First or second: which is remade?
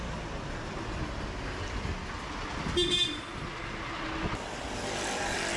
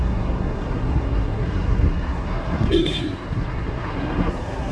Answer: second